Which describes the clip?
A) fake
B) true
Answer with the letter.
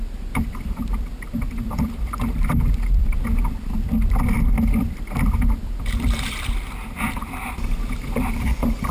A